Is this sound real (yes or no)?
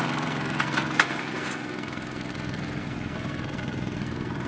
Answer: no